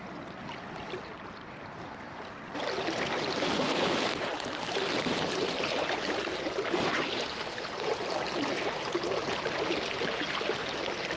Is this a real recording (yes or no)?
yes